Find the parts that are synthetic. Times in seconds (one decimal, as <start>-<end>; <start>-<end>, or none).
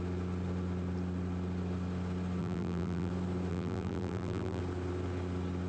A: 2.4-3.1; 3.5-4.6